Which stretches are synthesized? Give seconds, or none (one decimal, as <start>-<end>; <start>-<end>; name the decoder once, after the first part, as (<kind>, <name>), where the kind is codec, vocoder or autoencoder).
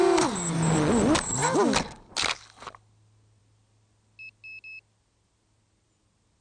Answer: none